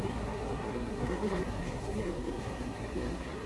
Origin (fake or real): fake